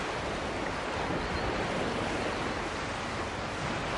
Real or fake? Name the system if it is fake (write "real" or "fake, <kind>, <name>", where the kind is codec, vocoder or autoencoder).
real